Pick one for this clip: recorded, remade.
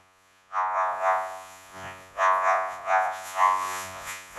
remade